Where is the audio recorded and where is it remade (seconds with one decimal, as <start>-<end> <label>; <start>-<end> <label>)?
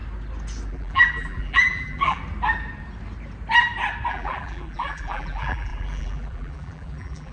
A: 0.0-0.7 recorded; 0.7-2.2 remade; 2.2-4.1 recorded; 4.1-7.3 remade